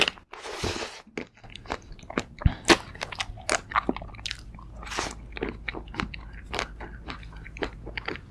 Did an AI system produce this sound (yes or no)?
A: no